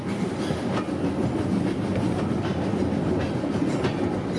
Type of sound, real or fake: real